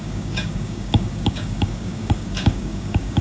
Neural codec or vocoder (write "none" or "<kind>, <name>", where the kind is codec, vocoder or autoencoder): codec, DAC